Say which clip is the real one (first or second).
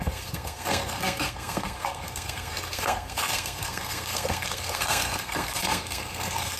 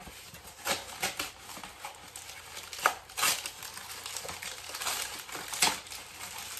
second